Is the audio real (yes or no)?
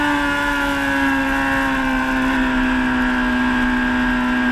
yes